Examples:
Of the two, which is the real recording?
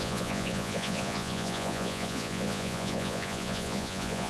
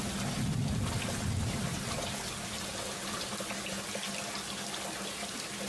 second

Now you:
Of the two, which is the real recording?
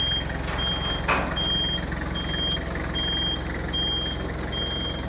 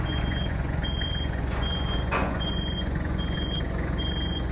first